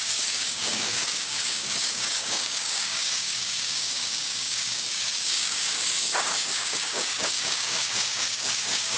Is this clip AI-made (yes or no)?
yes